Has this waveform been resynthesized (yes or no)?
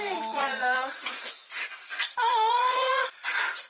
yes